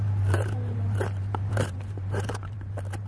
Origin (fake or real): fake